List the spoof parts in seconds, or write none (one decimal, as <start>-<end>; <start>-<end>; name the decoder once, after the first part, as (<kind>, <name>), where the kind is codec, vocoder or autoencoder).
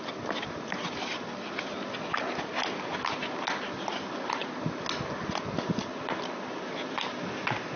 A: none